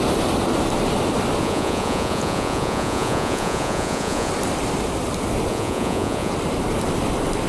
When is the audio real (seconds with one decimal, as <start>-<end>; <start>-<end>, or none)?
0.0-1.4; 4.3-5.5; 6.3-7.5